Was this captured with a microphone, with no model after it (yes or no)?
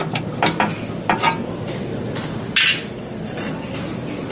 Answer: yes